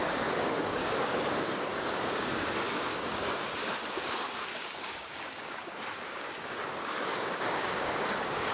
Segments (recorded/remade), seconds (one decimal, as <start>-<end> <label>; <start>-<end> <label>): 0.0-3.5 remade; 3.5-4.5 recorded; 4.5-8.5 remade